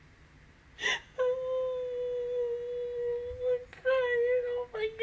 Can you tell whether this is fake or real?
real